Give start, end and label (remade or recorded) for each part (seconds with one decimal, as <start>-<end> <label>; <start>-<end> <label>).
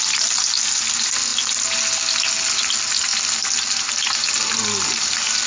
0.0-5.5 recorded